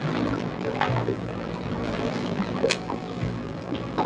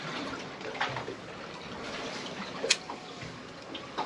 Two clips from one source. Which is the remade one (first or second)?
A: first